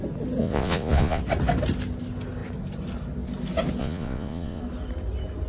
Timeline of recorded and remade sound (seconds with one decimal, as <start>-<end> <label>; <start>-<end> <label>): 0.0-0.4 recorded; 0.4-1.2 remade; 1.2-3.8 recorded; 3.8-4.6 remade; 4.6-5.5 recorded